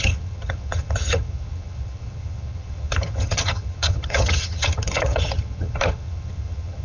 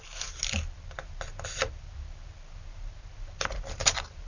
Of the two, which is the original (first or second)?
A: second